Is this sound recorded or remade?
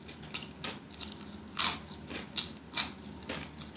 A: recorded